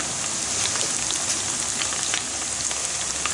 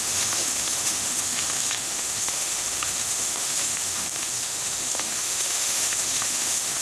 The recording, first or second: first